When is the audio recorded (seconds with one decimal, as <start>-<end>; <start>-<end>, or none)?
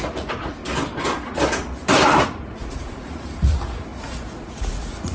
0.6-2.2